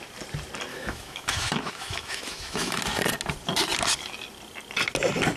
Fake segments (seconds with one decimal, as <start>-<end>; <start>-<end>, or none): 0.7-2.8